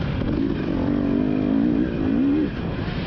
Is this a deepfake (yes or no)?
no